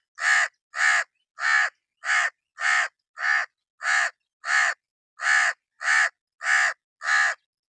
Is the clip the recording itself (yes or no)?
yes